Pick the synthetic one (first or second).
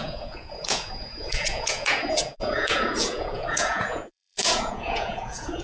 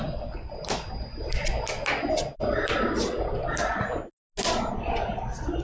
first